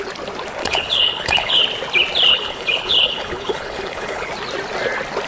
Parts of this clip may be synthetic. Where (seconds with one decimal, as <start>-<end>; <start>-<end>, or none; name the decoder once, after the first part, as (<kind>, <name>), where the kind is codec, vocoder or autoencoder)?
0.6-1.6 (codec, HILCodec); 2.3-4.3

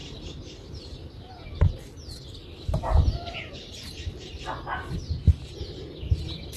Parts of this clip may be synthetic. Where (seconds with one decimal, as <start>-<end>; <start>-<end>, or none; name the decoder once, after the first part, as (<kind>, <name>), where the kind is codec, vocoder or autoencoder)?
none

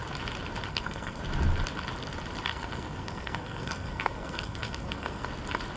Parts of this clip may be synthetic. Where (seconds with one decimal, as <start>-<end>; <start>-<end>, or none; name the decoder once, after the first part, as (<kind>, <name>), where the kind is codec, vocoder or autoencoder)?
0.7-1.2 (codec, SNAC); 2.5-5.3

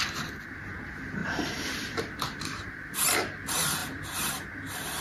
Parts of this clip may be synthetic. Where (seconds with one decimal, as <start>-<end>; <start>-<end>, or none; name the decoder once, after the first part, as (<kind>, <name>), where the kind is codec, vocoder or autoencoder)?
1.2-2.9 (vocoder, BigVGAN v2)